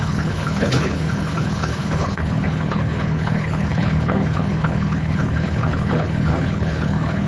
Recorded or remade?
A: remade